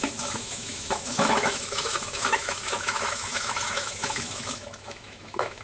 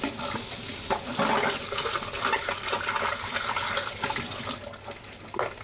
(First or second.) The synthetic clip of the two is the first